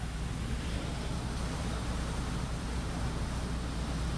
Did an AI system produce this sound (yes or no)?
no